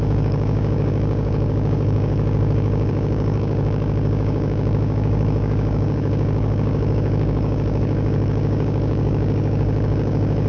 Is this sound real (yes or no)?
no